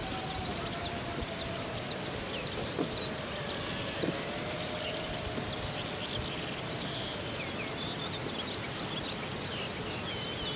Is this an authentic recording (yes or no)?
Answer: yes